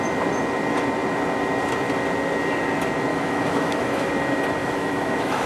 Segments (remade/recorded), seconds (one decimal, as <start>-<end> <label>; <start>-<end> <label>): 0.0-3.1 recorded; 3.1-4.1 remade; 4.1-4.6 recorded; 4.6-5.5 remade